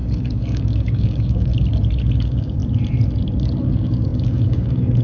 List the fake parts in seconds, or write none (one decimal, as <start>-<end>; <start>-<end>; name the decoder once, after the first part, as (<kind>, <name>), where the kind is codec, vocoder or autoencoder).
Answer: 0.0-1.5 (codec, DAC); 2.2-2.6; 3.6-5.0